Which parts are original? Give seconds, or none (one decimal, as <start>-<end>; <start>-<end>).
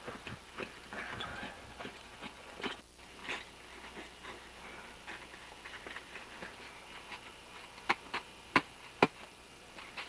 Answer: 0.0-1.3; 2.8-10.1